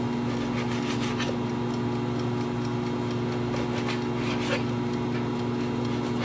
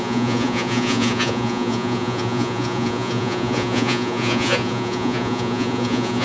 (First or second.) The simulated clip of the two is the second